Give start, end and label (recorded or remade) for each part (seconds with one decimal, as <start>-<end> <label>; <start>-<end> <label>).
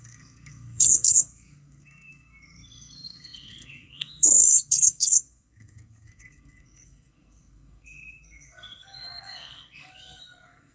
0.0-10.7 remade